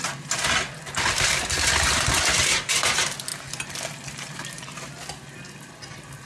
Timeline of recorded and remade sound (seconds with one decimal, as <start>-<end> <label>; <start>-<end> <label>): 0.0-6.3 recorded